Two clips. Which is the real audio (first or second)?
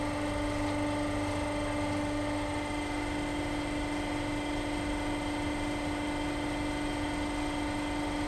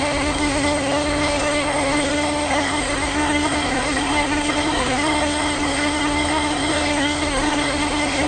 first